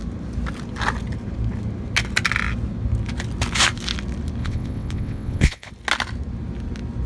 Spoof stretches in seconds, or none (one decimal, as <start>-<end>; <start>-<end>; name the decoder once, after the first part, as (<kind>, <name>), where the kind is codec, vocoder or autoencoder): 4.4-5.7 (vocoder, WaveNeXt)